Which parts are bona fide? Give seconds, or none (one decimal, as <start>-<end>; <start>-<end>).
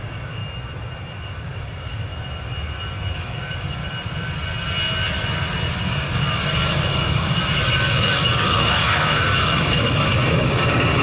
0.4-1.1; 2.1-3.1; 3.8-5.7